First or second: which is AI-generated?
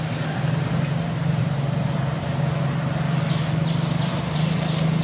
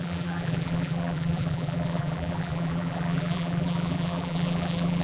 second